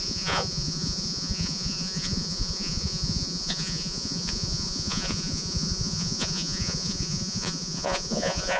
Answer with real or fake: fake